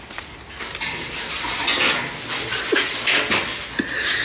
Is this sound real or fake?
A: real